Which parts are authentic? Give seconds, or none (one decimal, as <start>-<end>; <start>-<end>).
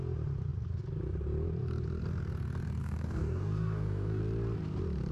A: 0.0-2.8; 4.2-5.1